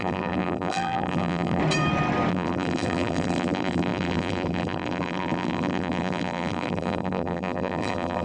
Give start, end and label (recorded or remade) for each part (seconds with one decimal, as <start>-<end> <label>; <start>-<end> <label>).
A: 0.0-1.6 remade; 1.6-2.3 recorded; 2.3-8.2 remade